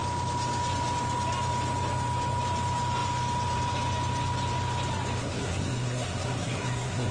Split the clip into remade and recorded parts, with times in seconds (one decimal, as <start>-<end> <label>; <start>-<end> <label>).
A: 0.0-5.2 recorded; 5.2-7.1 remade

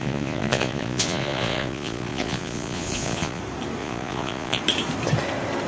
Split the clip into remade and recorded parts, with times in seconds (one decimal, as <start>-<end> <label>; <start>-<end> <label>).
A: 0.0-3.4 remade; 3.4-3.8 recorded; 3.8-4.6 remade; 4.6-5.7 recorded

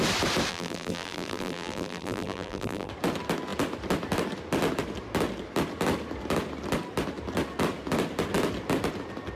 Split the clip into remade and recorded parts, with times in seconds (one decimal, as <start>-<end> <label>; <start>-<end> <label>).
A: 0.0-0.5 recorded; 0.5-2.9 remade; 2.9-9.4 recorded

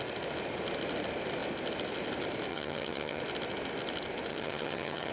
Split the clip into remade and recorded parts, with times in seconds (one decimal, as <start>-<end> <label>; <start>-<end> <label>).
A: 0.0-2.5 recorded; 2.5-3.2 remade; 3.2-4.3 recorded; 4.3-5.1 remade

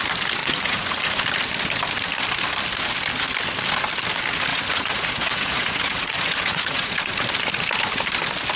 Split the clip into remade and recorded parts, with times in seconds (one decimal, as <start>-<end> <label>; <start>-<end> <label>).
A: 0.0-0.4 recorded; 0.4-1.2 remade; 1.2-4.5 recorded; 4.5-7.0 remade; 7.0-8.6 recorded

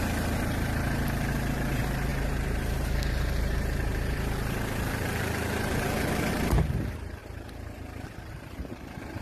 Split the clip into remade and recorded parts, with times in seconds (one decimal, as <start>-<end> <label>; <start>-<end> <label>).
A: 0.0-7.2 remade; 7.2-8.3 recorded; 8.3-9.2 remade